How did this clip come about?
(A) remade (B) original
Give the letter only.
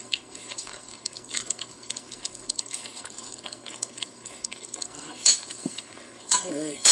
A